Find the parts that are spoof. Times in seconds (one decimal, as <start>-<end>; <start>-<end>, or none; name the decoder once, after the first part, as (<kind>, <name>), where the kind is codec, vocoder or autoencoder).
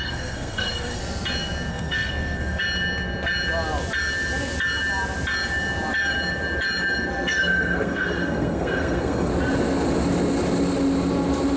0.0-1.0 (codec, SNAC); 1.7-2.6; 7.1-9.3